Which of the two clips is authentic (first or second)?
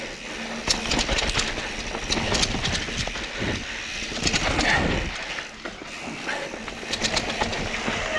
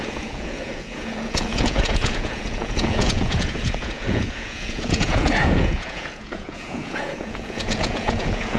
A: first